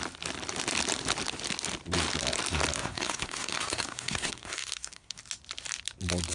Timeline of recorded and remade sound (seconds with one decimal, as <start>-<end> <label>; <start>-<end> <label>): 0.0-2.8 recorded; 2.8-5.2 remade; 5.2-6.3 recorded

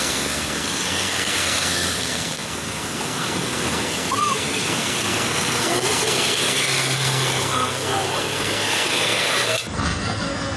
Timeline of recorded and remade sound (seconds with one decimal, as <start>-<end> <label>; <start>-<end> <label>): 0.0-10.6 remade

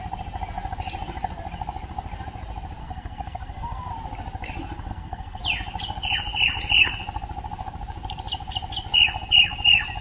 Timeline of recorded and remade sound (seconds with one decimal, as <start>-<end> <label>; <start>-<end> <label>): 0.0-2.8 recorded; 2.8-3.9 remade; 3.9-4.9 recorded; 4.9-5.4 remade; 5.4-10.0 recorded

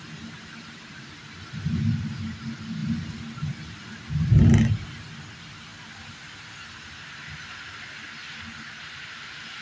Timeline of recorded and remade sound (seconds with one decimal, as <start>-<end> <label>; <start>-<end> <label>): 0.0-9.6 recorded

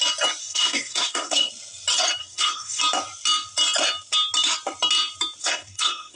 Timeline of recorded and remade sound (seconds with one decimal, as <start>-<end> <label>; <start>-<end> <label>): 0.0-0.4 recorded; 0.4-1.5 remade; 1.5-2.2 recorded; 2.2-2.8 remade; 2.8-5.4 recorded; 5.4-6.2 remade

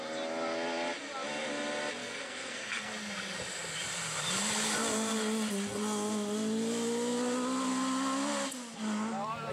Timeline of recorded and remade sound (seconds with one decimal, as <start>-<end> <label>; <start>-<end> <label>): 0.0-2.0 recorded; 2.0-2.9 remade; 2.9-9.5 recorded

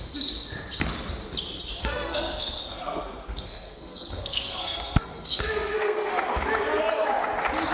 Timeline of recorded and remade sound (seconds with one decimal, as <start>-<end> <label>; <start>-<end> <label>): 0.0-1.8 recorded; 1.8-6.1 remade; 6.1-7.7 recorded